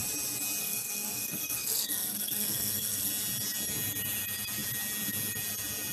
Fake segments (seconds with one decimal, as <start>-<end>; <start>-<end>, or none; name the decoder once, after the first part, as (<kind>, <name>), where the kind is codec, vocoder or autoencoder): 0.6-3.1 (codec, SNAC)